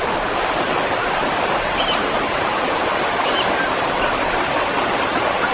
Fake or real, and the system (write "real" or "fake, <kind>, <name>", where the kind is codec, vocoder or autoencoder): real